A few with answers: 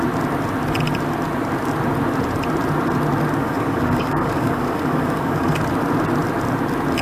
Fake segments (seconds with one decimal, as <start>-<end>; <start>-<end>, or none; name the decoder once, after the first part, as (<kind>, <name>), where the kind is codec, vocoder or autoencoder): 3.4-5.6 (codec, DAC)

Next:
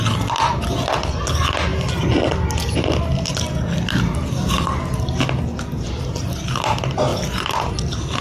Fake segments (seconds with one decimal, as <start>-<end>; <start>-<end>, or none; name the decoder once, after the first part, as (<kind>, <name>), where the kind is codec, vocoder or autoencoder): none

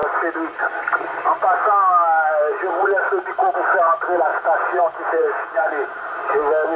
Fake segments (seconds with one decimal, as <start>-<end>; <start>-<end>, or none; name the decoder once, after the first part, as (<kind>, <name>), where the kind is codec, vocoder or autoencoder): 4.3-6.0 (vocoder, Vocos)